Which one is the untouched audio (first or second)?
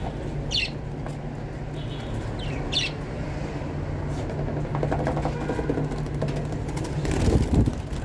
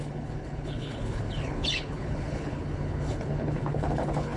first